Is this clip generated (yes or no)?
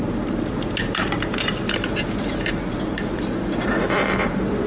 yes